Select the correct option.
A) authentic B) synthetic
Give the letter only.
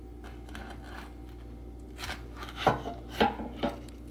A